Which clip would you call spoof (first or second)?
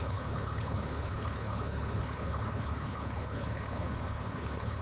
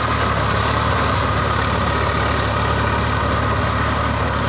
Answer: first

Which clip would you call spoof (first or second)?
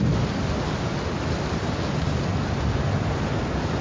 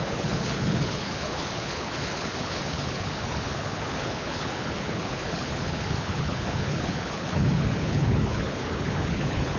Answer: second